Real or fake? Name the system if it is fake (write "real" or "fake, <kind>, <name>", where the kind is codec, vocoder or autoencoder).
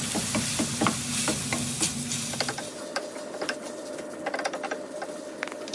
real